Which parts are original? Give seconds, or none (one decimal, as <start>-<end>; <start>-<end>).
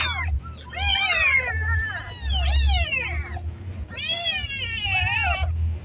0.0-0.9; 1.5-5.8